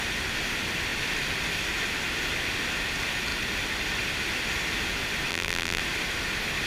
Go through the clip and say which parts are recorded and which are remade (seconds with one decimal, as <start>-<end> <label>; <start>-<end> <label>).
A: 0.0-5.3 recorded; 5.3-5.8 remade; 5.8-6.7 recorded